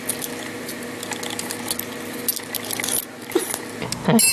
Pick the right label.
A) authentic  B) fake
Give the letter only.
A